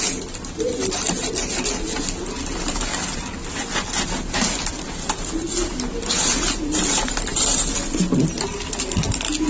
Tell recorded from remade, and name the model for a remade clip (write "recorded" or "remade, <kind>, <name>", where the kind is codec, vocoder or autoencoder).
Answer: recorded